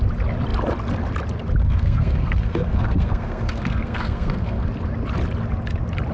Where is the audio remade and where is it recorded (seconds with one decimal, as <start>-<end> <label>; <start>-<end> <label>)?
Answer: 0.0-1.6 recorded; 1.6-4.7 remade; 4.7-6.1 recorded

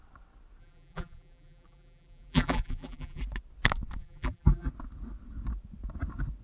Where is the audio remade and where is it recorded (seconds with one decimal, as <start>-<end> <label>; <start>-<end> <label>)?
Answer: 0.0-0.6 recorded; 0.6-3.2 remade; 3.2-4.0 recorded; 4.0-4.7 remade; 4.7-6.4 recorded

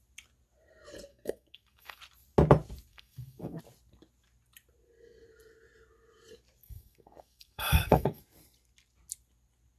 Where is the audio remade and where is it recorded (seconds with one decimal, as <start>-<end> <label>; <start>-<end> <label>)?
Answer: 0.0-1.1 recorded; 1.1-2.0 remade; 2.0-2.9 recorded; 2.9-3.6 remade; 3.6-6.6 recorded; 6.6-8.2 remade; 8.2-9.8 recorded